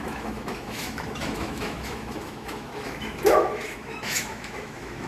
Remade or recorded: remade